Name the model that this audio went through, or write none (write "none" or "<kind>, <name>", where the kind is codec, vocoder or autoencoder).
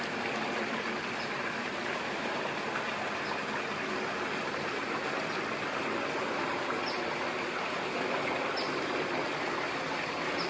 none